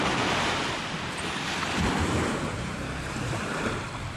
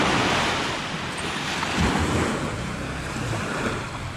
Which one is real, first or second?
second